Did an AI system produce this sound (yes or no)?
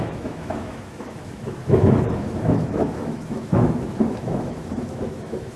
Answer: yes